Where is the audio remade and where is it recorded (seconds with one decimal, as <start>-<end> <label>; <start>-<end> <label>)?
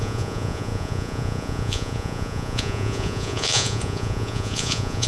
0.0-5.1 remade